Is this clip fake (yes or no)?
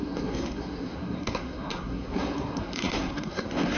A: yes